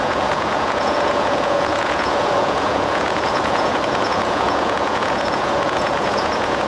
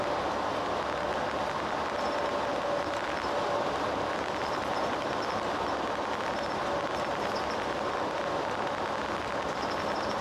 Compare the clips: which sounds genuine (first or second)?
second